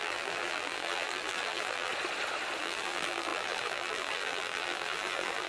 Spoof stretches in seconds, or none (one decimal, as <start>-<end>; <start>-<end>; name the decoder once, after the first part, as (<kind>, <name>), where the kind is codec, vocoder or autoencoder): 0.0-1.9 (vocoder, BigVGAN v2); 2.6-5.5